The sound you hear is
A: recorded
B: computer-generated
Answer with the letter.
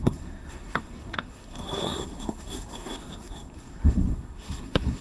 B